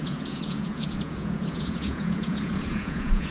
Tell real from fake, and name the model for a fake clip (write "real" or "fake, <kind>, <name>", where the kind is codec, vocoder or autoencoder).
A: fake, vocoder, Vocos